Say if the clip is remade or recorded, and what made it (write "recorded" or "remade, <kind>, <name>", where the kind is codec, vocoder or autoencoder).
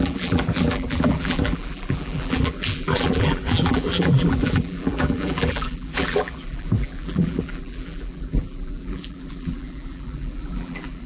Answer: remade, vocoder, BigVGAN v2